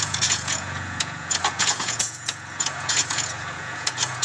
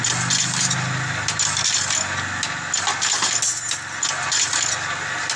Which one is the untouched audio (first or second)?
second